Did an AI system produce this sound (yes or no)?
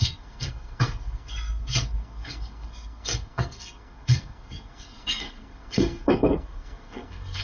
yes